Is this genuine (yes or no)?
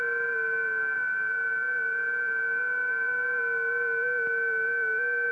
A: yes